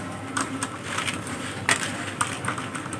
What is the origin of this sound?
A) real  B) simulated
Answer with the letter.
A